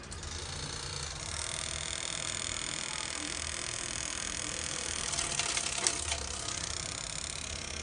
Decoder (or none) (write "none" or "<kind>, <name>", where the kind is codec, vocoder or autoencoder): none